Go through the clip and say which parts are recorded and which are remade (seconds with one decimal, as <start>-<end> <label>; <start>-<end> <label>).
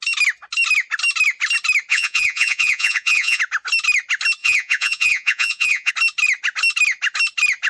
0.0-1.9 recorded; 1.9-3.4 remade; 3.4-4.4 recorded; 4.4-5.9 remade; 5.9-7.7 recorded